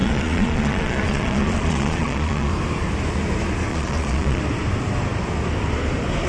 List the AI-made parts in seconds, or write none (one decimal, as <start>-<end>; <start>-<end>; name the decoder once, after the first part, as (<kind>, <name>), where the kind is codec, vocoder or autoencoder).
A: 0.0-2.5 (vocoder, Vocos); 3.7-4.4